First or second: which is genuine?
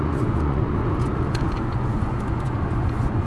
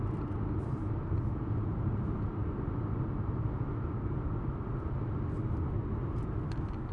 second